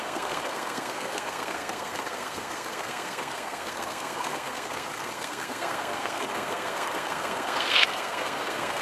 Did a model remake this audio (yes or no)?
yes